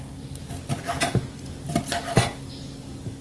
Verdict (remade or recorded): recorded